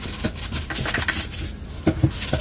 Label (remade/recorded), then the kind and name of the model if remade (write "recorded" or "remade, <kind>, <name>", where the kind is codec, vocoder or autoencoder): recorded